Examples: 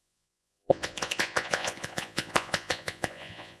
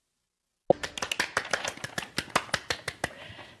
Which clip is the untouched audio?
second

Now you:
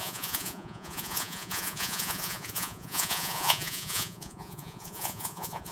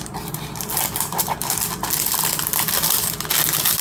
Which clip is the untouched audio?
second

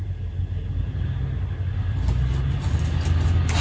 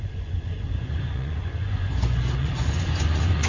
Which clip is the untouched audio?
first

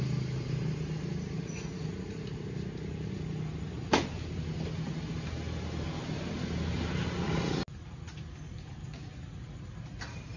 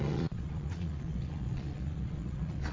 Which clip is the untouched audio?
first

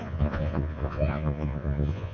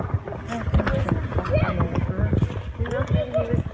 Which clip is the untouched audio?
second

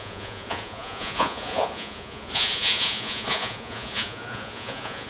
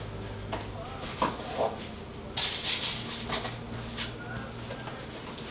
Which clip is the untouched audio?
second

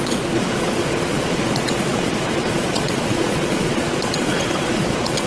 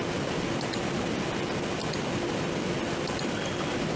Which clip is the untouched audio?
second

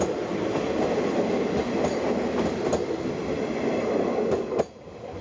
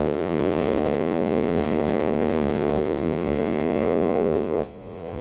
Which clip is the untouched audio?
first